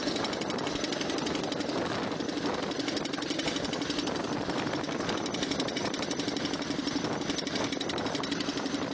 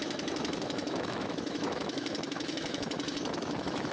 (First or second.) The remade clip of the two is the second